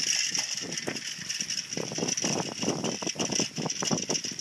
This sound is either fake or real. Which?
real